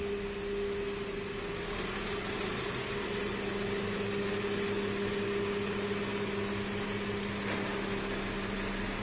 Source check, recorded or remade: recorded